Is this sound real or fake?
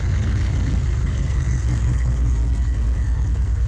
fake